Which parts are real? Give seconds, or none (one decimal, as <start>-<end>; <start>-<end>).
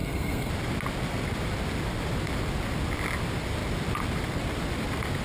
0.5-5.2